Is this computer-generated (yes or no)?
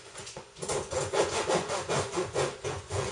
yes